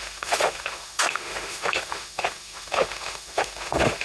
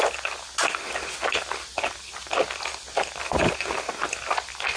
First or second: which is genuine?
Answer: second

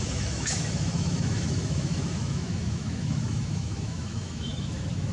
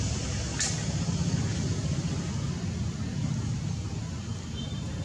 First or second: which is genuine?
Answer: second